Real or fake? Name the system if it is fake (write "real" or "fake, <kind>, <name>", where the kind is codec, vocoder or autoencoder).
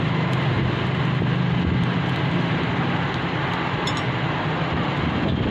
real